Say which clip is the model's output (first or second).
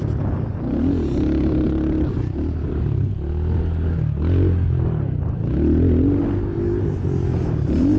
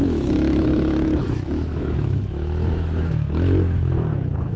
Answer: second